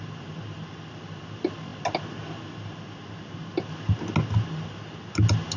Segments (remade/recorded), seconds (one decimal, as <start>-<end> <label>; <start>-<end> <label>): 0.0-5.6 recorded